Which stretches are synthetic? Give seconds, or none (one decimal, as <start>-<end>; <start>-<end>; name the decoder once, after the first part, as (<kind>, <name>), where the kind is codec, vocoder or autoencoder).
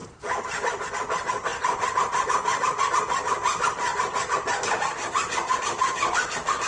0.0-3.9 (vocoder, BigVGAN v2); 5.6-6.7